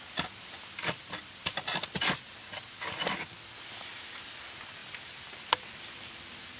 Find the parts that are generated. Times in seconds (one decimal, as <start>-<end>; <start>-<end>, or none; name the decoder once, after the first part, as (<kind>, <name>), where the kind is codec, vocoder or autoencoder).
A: none